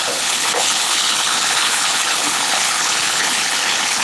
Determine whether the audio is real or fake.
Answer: fake